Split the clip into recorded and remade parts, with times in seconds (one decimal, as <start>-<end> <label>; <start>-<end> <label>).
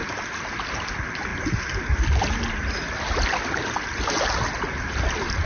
0.0-5.5 recorded